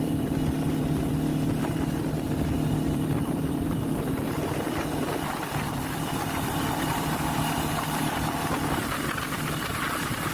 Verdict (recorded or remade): remade